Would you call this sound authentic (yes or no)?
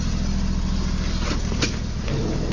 yes